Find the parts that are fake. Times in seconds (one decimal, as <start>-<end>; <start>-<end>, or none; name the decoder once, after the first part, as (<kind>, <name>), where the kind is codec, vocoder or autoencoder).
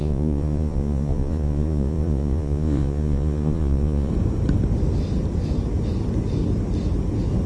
0.0-4.1 (vocoder, Vocos)